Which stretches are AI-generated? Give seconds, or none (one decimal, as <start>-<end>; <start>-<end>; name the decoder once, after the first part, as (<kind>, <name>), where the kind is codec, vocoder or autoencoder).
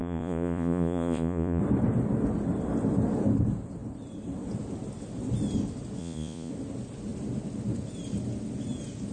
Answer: 0.0-1.6 (vocoder, Vocos); 6.0-6.5